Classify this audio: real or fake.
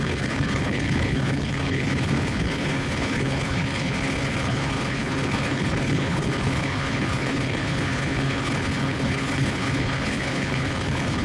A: fake